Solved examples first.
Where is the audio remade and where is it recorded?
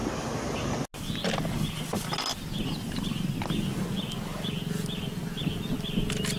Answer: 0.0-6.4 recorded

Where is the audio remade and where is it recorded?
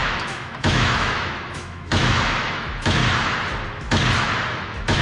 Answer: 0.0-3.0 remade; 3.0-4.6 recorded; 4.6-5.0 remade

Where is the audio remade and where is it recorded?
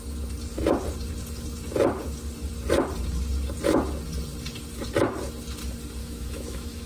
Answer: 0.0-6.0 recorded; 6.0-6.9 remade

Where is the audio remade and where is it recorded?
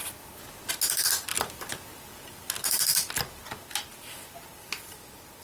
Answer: 0.0-5.4 recorded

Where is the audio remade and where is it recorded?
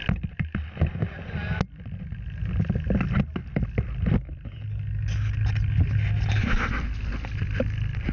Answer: 0.0-8.1 recorded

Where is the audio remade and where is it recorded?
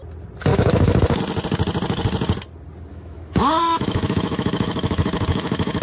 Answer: 0.0-0.5 recorded; 0.5-1.2 remade; 1.2-2.9 recorded; 2.9-5.8 remade